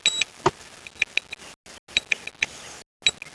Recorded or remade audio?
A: recorded